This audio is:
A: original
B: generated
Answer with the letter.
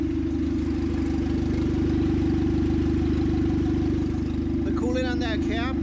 A